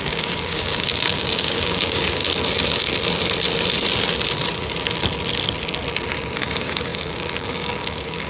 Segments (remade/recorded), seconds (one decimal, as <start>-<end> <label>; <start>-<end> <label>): 0.0-2.2 remade; 2.2-6.4 recorded; 6.4-8.3 remade